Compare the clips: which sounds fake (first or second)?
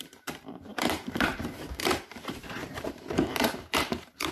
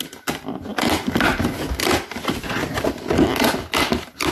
first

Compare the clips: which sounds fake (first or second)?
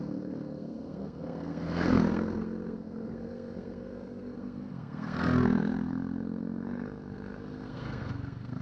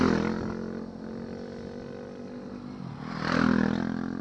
first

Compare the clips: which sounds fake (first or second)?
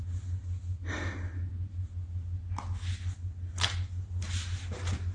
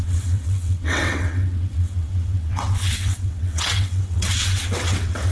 second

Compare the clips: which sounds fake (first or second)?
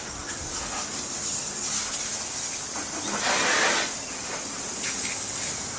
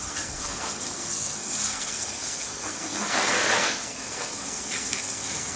second